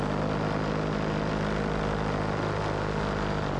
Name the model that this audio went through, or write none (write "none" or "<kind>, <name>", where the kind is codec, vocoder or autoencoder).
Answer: none